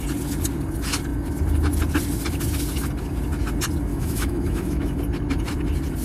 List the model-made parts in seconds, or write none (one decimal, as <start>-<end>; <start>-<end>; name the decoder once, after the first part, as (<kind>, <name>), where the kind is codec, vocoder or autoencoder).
3.9-5.0 (autoencoder, DAC-VAE)